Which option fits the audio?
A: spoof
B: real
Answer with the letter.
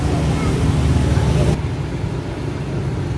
B